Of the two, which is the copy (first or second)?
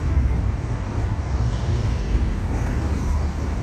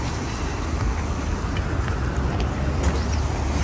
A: first